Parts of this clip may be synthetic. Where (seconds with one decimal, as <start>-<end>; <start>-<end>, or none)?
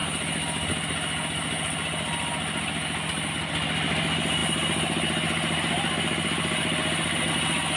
none